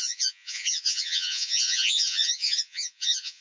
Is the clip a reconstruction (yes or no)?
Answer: yes